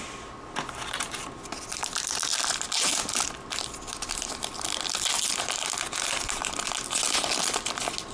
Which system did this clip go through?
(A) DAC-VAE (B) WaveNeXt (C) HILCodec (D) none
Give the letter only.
D